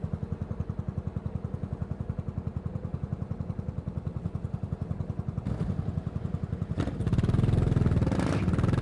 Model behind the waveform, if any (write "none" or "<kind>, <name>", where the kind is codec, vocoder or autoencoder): none